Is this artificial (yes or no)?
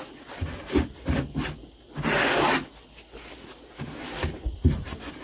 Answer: no